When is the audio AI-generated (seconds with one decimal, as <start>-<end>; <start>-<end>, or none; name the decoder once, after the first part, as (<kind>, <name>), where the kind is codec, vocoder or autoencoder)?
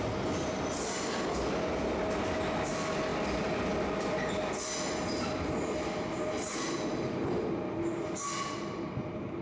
none